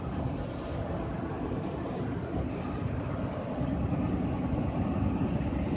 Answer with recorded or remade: recorded